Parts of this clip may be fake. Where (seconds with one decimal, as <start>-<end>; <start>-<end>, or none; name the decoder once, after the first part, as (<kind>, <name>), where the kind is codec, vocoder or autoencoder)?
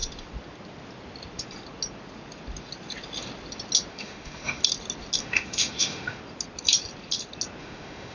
3.9-4.6 (autoencoder, DAC-VAE); 5.2-6.2; 7.6-8.1